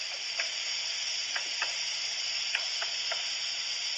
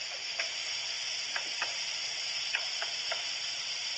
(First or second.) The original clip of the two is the first